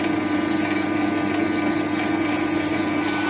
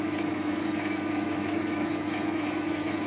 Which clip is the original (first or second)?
first